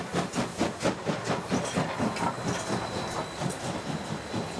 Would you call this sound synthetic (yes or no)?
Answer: no